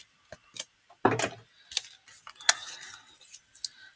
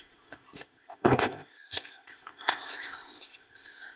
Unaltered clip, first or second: first